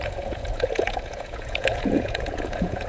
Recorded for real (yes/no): no